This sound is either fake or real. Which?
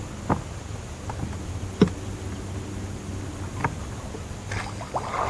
real